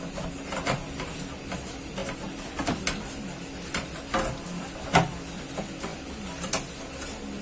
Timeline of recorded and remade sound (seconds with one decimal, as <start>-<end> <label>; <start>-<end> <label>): 0.0-7.4 recorded